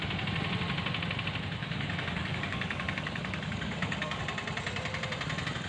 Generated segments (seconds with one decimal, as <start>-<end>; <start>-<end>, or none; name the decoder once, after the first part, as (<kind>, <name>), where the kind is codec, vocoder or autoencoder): 1.6-4.2 (codec, DAC)